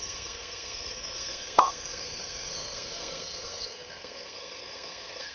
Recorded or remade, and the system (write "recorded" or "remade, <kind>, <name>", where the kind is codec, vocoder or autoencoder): remade, codec, SNAC